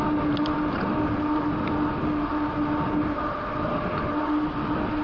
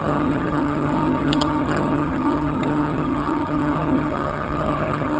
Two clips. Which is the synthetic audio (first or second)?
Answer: second